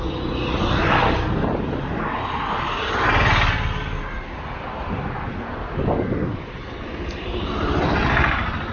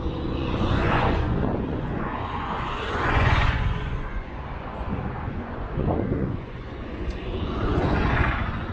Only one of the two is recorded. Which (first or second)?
first